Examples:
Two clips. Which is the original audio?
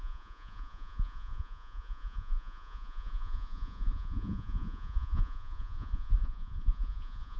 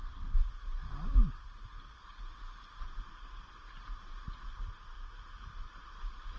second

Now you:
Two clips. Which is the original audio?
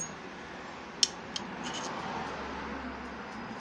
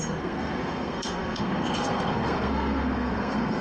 first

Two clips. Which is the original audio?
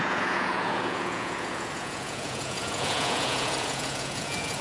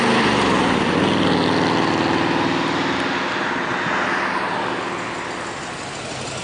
second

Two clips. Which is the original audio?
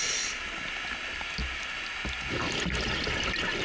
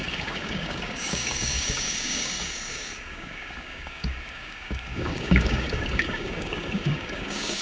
first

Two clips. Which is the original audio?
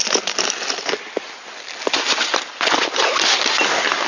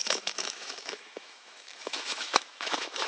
first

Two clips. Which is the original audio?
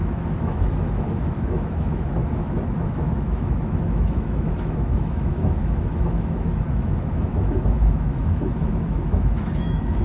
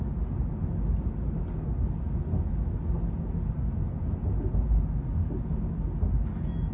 second